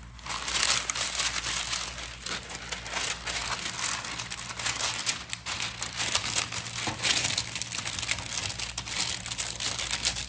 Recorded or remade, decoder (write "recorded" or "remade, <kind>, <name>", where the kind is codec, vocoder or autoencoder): recorded